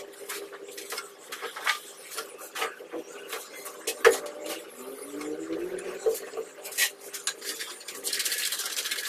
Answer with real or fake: real